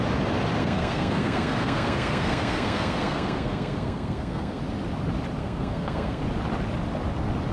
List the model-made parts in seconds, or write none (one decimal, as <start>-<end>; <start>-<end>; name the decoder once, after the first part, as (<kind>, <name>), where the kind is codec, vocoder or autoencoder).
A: 0.6-4.6 (codec, SNAC); 5.4-6.2